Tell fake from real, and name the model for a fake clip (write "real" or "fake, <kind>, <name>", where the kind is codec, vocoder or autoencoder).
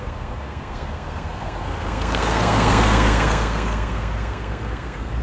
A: fake, codec, SNAC